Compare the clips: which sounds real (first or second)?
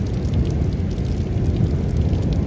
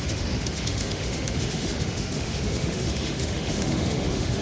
first